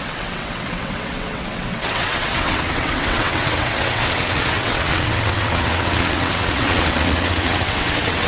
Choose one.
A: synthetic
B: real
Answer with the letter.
A